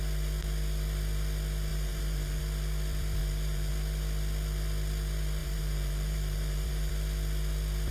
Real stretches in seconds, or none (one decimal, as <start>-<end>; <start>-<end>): 0.0-1.7; 2.4-3.2; 3.7-5.4; 6.9-7.9